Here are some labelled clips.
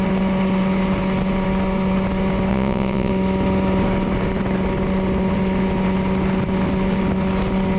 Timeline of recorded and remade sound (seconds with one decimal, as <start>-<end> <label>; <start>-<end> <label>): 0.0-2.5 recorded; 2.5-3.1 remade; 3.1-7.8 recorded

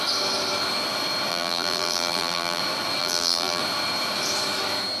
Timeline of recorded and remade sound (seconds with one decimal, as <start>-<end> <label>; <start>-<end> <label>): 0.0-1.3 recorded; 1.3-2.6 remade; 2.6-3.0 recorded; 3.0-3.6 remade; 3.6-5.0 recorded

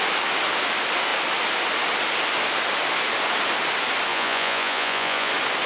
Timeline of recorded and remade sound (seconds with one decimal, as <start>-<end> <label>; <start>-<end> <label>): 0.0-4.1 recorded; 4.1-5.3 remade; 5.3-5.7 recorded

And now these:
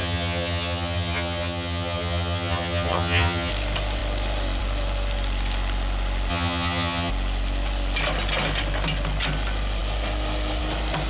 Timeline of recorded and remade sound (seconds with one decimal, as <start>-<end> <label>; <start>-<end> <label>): 0.0-3.5 remade; 3.5-6.3 recorded; 6.3-7.1 remade; 7.1-11.1 recorded

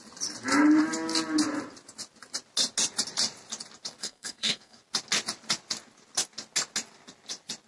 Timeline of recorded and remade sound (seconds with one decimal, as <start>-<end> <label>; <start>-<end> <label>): 0.0-4.0 recorded; 4.0-4.8 remade; 4.8-7.7 recorded

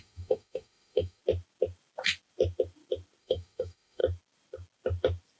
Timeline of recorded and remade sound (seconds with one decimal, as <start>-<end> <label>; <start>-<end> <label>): 0.0-1.2 remade; 1.2-3.2 recorded; 3.2-4.0 remade; 4.0-5.4 recorded

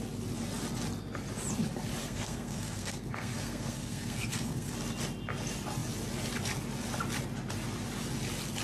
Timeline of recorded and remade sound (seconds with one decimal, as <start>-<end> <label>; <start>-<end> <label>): 0.0-2.0 recorded; 2.0-4.7 remade; 4.7-8.6 recorded

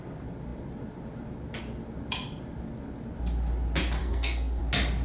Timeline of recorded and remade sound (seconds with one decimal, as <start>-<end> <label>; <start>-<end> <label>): 0.0-4.0 recorded; 4.0-4.6 remade; 4.6-5.0 recorded